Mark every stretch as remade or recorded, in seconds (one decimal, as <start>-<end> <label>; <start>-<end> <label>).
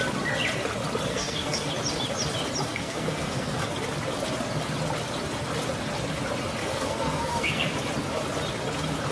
0.0-1.1 recorded; 1.1-1.7 remade; 1.7-2.7 recorded; 2.7-3.7 remade; 3.7-6.6 recorded; 6.6-7.7 remade; 7.7-9.1 recorded